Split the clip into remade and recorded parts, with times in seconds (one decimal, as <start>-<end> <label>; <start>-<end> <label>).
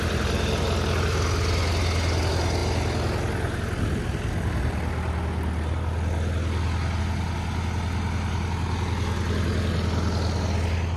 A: 0.0-11.0 recorded